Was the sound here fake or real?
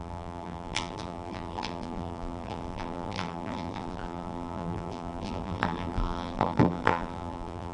fake